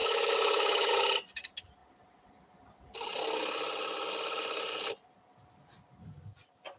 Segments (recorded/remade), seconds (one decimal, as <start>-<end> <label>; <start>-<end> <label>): 0.0-0.9 remade; 0.9-6.8 recorded